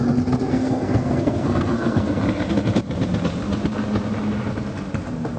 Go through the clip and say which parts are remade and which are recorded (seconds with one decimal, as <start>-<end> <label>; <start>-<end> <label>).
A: 0.0-0.5 recorded; 0.5-2.2 remade; 2.2-5.4 recorded